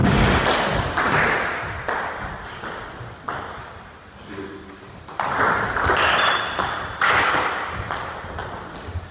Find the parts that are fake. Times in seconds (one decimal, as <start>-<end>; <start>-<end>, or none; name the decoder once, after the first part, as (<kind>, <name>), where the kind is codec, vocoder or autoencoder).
none